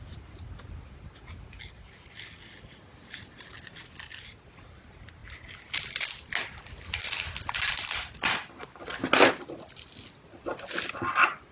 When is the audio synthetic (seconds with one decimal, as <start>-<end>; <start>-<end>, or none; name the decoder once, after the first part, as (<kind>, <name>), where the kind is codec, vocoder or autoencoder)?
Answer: none